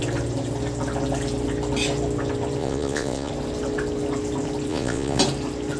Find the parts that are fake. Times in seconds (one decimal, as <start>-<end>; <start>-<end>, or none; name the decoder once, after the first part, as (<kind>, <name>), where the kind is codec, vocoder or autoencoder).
2.6-3.3 (vocoder, Vocos); 4.7-5.2